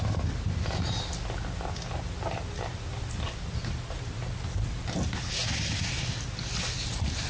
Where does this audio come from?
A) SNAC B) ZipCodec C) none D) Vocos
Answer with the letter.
C